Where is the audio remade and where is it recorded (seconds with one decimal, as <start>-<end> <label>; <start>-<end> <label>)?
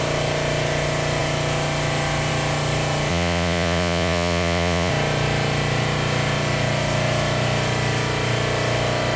0.0-3.1 recorded; 3.1-4.9 remade; 4.9-9.2 recorded